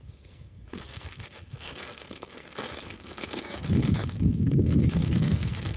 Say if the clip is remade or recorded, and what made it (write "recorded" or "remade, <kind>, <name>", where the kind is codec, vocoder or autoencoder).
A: remade, codec, SNAC